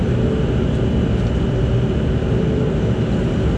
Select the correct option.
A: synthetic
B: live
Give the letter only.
B